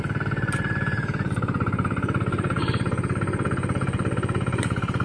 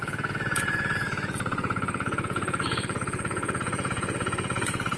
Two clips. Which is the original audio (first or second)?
first